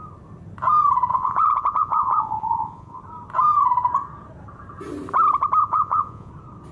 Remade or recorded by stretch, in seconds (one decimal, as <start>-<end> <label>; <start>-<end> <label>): 0.0-1.1 recorded; 1.1-3.0 remade; 3.0-5.6 recorded; 5.6-6.3 remade; 6.3-6.7 recorded